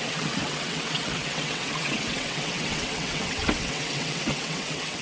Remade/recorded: remade